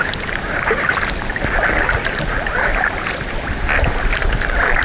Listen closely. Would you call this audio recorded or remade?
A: recorded